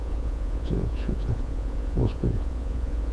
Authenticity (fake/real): fake